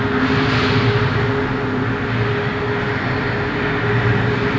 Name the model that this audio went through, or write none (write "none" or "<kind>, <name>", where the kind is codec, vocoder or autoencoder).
none